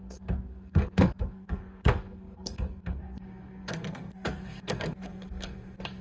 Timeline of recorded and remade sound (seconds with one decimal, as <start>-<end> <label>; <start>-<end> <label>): 0.0-6.0 remade